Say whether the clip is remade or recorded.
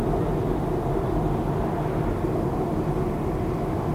recorded